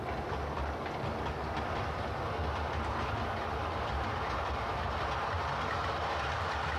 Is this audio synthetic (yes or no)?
no